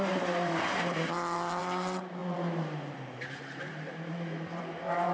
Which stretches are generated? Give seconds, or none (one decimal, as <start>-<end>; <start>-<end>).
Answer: 0.0-5.1